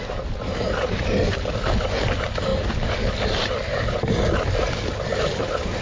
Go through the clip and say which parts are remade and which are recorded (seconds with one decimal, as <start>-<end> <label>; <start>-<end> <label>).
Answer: 0.0-5.8 recorded